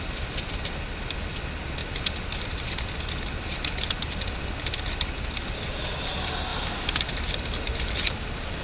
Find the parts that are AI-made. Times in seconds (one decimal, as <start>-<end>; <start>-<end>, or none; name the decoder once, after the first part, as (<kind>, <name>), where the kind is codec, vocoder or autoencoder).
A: none